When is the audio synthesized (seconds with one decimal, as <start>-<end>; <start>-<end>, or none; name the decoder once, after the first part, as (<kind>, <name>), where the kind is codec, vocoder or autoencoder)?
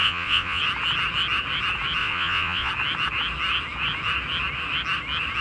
0.0-0.6 (vocoder, Vocos); 2.0-2.7